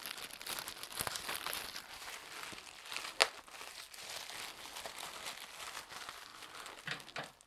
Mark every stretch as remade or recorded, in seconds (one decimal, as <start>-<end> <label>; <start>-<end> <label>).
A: 0.0-7.5 recorded